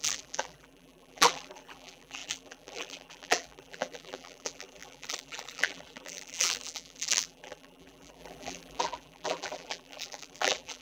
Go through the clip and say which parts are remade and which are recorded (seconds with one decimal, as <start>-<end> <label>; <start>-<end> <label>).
0.0-10.8 remade